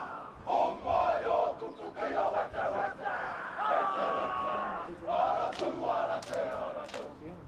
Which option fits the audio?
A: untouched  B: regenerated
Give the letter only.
B